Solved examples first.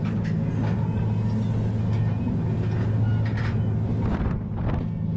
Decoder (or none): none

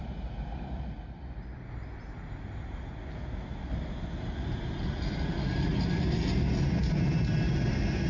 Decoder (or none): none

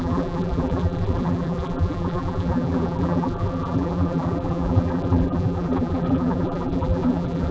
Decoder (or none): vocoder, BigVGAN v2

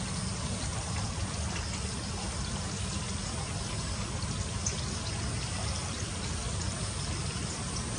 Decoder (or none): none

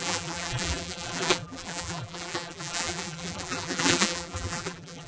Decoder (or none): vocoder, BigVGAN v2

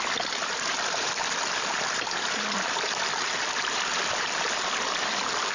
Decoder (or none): vocoder, BigVGAN v2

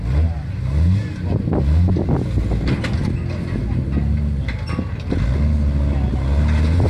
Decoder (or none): none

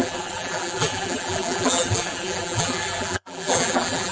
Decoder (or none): vocoder, BigVGAN v2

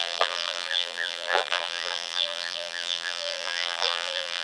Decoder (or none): vocoder, BigVGAN v2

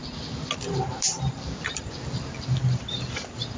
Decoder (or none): none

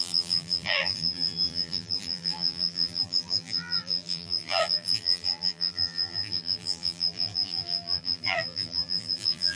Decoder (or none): vocoder, BigVGAN v2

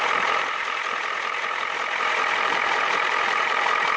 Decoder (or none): vocoder, BigVGAN v2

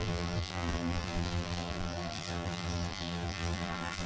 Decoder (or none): vocoder, BigVGAN v2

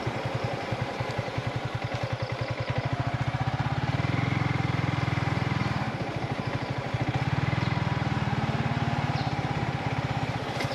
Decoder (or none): vocoder, BigVGAN v2